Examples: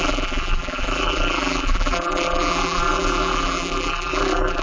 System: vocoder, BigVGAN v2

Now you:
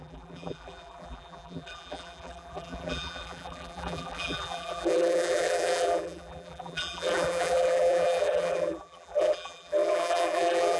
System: vocoder, BigVGAN v2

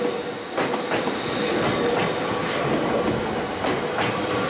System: none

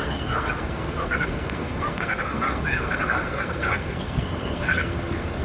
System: codec, SNAC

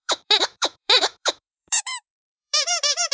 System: autoencoder, DAC-VAE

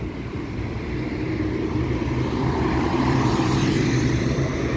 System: vocoder, BigVGAN v2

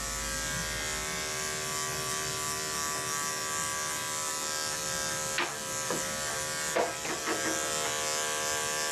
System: none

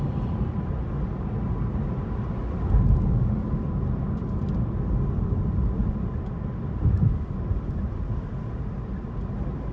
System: none